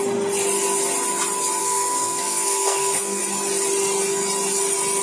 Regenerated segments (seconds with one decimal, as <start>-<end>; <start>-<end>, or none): 1.6-3.2